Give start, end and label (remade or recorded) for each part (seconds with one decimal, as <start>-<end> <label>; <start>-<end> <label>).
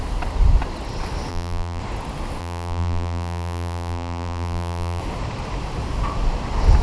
0.0-1.3 recorded; 1.3-1.8 remade; 1.8-2.4 recorded; 2.4-5.0 remade; 5.0-6.8 recorded